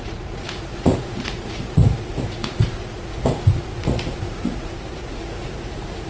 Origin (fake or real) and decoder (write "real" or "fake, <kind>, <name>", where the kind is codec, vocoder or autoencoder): fake, vocoder, Vocos